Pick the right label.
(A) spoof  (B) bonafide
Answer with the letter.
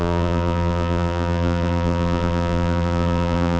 A